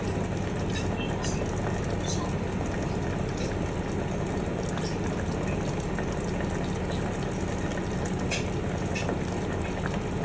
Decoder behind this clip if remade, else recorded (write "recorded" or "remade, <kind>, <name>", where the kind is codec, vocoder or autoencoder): recorded